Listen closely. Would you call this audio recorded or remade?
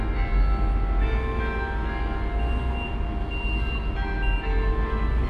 recorded